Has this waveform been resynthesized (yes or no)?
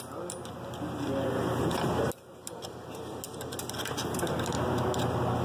no